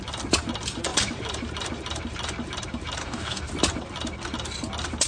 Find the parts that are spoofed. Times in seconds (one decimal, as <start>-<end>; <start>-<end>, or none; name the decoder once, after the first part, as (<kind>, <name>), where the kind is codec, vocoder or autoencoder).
3.0-3.5 (codec, DAC)